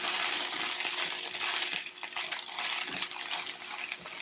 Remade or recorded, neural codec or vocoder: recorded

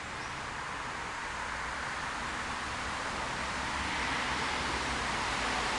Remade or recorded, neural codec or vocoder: recorded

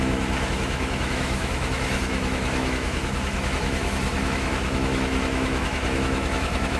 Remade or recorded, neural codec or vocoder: remade, autoencoder, DAC-VAE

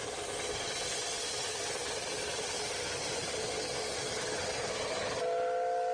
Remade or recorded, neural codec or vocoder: recorded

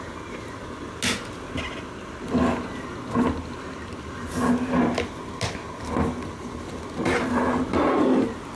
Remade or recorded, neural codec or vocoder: recorded